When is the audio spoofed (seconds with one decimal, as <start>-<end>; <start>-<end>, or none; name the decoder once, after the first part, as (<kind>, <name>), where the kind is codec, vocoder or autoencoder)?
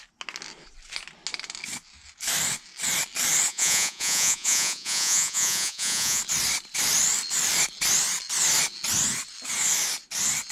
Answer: 3.5-6.2 (vocoder, Vocos)